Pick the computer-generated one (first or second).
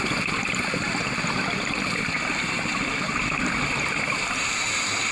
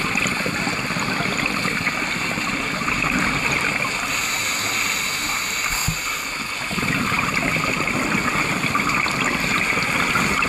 first